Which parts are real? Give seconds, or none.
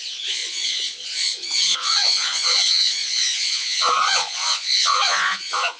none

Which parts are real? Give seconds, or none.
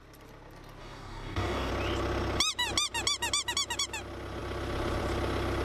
0.0-0.8; 1.7-5.6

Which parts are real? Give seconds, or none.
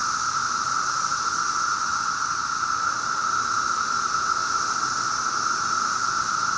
0.0-6.6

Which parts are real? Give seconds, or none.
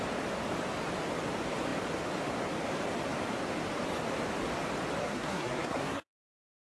0.0-5.0